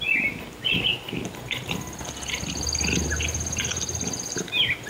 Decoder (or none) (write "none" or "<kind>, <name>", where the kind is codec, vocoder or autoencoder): none